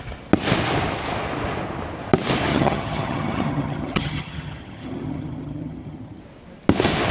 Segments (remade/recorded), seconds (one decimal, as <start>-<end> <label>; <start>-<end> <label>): 0.0-2.5 recorded; 2.5-6.2 remade; 6.2-7.1 recorded